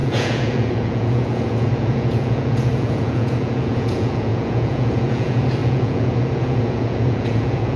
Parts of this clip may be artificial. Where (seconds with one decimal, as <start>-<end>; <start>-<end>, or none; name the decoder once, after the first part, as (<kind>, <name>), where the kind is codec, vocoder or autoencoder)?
0.0-7.8 (vocoder, Vocos)